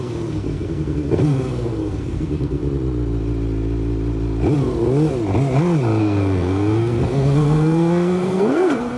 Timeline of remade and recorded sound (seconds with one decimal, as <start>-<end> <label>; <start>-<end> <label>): 0.0-2.6 remade; 2.6-6.0 recorded; 6.0-9.0 remade